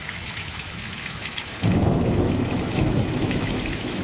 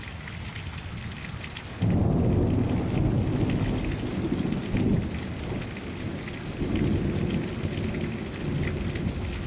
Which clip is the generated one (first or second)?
first